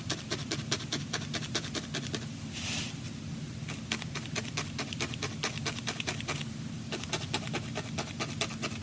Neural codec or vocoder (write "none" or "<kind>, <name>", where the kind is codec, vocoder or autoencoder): none